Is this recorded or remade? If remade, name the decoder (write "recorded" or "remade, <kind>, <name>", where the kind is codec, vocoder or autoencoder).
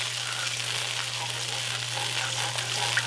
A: recorded